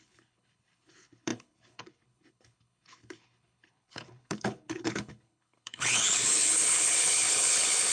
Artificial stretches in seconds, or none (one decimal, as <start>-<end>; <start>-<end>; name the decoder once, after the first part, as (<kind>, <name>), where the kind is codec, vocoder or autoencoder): 0.0-7.9 (codec, HILCodec)